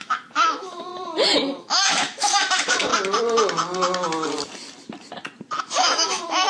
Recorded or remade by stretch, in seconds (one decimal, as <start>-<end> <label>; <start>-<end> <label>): 0.0-0.9 remade; 0.9-1.6 recorded; 1.6-2.9 remade; 2.9-5.6 recorded; 5.6-6.5 remade